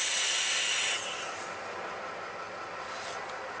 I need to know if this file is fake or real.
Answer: real